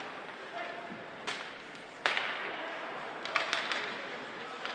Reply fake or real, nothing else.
real